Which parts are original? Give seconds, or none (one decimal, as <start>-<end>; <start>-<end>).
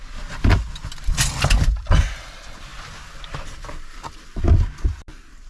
0.0-5.5